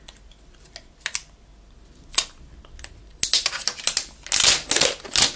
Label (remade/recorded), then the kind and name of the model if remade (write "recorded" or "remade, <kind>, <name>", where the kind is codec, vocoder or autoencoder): recorded